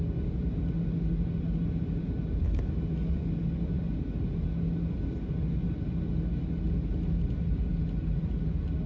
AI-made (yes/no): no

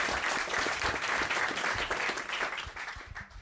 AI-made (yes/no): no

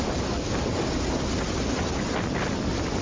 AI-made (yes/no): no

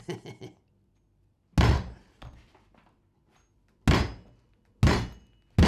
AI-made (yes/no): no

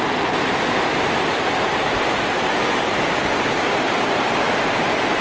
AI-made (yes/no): no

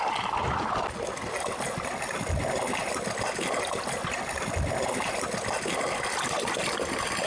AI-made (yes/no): no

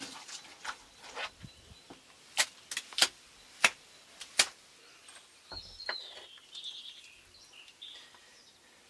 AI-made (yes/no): no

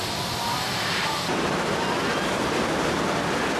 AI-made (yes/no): no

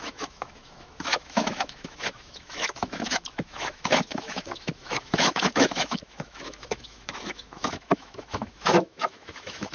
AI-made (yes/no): yes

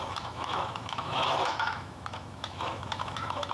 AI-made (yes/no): yes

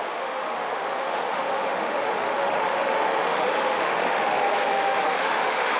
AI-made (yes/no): yes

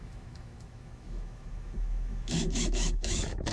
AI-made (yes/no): yes